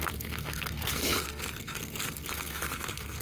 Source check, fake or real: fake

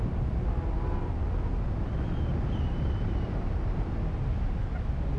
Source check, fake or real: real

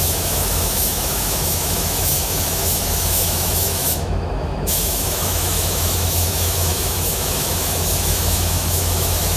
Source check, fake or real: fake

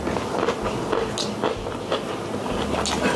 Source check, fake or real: real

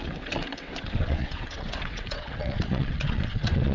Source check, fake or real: fake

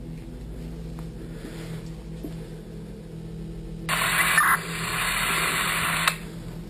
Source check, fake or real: real